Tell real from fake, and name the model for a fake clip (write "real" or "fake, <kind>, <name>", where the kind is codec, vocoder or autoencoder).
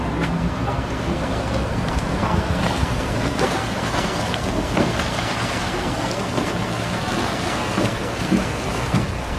fake, codec, SNAC